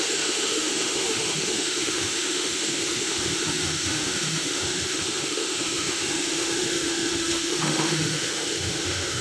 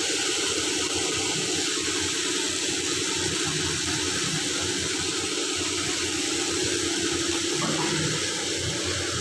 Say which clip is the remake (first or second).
first